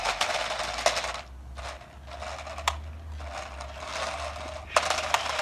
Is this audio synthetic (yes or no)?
no